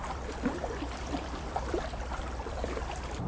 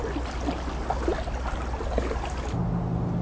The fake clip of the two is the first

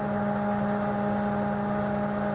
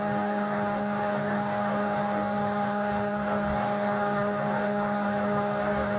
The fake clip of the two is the second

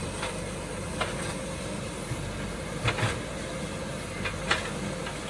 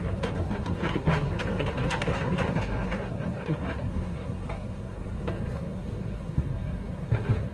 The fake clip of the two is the second